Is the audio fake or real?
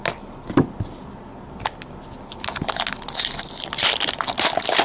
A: real